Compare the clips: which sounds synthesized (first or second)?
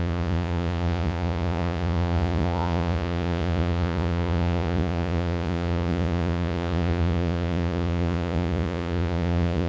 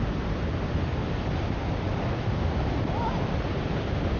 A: first